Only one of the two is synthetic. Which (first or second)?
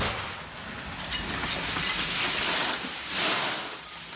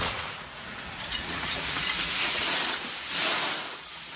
second